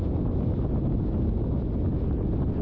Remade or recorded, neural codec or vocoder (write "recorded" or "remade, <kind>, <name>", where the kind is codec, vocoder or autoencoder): recorded